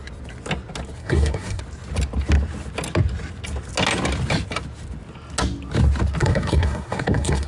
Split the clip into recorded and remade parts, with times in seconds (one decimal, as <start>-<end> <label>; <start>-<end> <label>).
0.0-1.0 recorded; 1.0-1.6 remade; 1.6-6.2 recorded; 6.2-7.5 remade